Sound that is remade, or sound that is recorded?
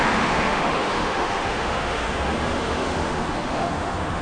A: remade